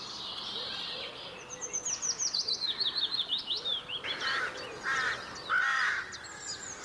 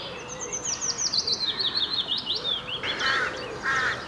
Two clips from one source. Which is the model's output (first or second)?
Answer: second